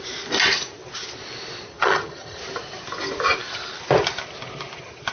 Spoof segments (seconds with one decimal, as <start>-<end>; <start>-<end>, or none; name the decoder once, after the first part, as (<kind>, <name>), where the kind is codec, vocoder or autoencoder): 1.7-2.4 (vocoder, HiFi-GAN)